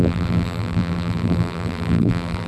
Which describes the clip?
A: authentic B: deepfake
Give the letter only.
B